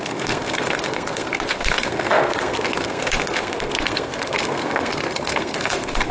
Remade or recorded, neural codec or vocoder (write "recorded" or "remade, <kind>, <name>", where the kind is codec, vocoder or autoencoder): remade, codec, SNAC